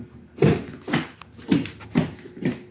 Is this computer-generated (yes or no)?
no